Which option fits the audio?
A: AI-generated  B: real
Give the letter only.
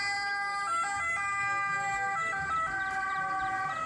B